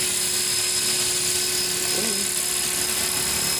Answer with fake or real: real